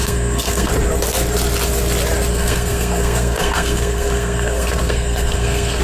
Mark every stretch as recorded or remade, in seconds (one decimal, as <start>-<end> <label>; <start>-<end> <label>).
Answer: 0.0-0.7 remade; 0.7-2.3 recorded; 2.3-5.8 remade